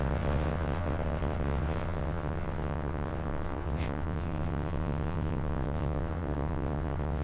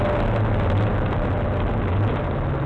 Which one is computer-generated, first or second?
first